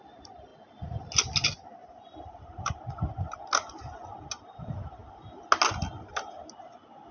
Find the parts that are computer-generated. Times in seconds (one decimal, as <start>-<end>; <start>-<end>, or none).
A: 1.8-2.8